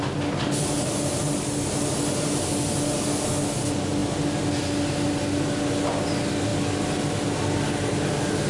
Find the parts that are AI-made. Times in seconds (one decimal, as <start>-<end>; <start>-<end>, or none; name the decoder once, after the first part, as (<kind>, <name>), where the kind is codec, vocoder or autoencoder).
none